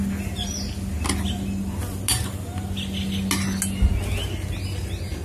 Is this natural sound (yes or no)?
yes